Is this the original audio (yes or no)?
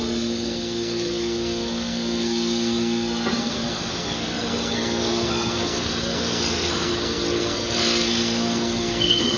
no